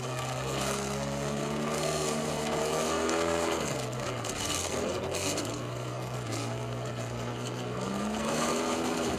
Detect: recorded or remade remade